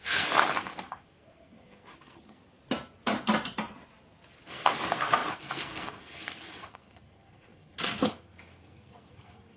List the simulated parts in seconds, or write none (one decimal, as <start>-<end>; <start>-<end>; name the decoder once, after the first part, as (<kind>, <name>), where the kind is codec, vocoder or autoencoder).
0.0-2.4 (codec, SNAC); 4.5-9.6